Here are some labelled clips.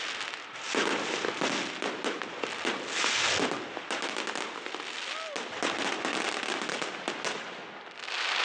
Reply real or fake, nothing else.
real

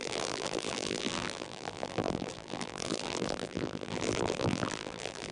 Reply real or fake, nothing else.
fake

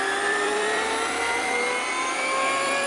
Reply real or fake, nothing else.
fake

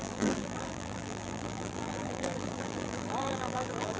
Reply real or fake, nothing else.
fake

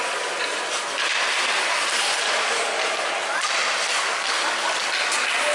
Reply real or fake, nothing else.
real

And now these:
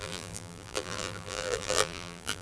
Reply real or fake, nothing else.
fake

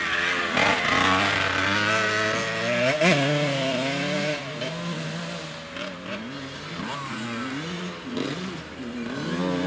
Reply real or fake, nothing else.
real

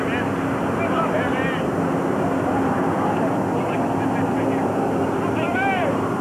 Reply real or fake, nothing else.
real